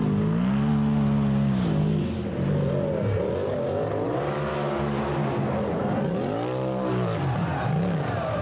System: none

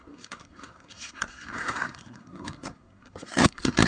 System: codec, SNAC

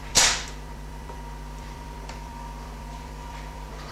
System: vocoder, BigVGAN v2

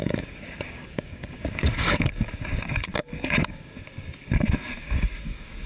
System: codec, DAC